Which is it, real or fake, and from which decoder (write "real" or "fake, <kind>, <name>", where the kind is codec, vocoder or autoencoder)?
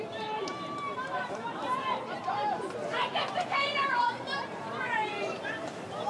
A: fake, vocoder, BigVGAN v2